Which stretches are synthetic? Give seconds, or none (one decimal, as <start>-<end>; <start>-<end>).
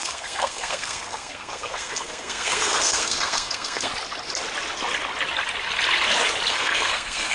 0.0-3.9; 6.5-7.3